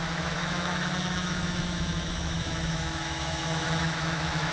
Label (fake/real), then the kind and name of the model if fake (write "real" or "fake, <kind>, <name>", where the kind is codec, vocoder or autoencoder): fake, autoencoder, DAC-VAE